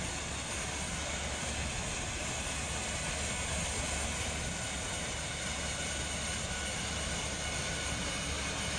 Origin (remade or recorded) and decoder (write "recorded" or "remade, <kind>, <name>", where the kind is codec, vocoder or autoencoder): recorded